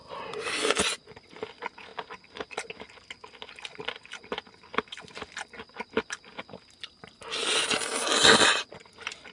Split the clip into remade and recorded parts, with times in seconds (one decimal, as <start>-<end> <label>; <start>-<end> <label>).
0.0-9.3 recorded